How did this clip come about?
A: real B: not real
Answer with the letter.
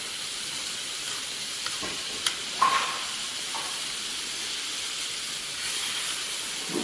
A